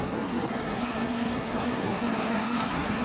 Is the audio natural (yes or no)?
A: no